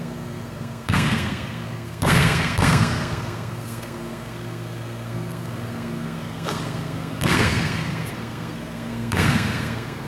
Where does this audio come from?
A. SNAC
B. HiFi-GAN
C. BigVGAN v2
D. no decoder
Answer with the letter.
A